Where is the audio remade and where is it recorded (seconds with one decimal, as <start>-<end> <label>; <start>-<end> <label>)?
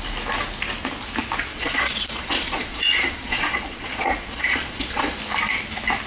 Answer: 0.0-1.5 recorded; 1.5-5.2 remade; 5.2-6.1 recorded